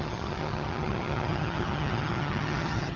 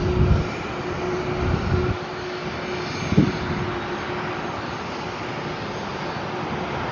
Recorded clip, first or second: second